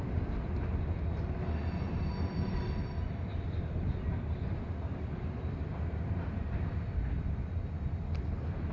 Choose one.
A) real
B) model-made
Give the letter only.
A